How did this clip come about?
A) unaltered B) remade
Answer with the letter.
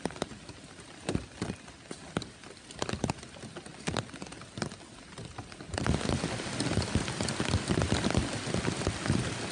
A